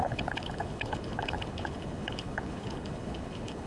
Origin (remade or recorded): remade